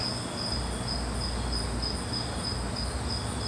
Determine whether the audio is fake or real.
real